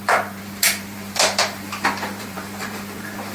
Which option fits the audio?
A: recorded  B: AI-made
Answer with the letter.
B